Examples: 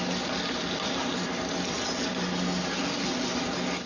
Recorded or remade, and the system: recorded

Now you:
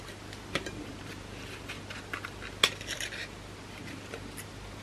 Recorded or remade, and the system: recorded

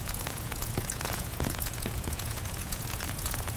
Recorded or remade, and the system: remade, vocoder, Vocos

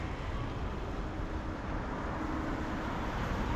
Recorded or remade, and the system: recorded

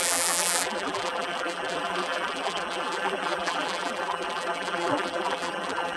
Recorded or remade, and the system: remade, vocoder, BigVGAN v2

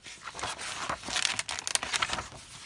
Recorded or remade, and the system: recorded